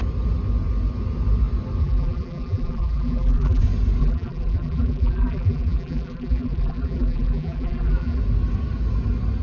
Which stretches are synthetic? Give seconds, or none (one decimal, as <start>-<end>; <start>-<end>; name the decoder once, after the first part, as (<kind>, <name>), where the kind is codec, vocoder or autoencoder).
1.8-3.6 (vocoder, BigVGAN v2); 4.0-8.2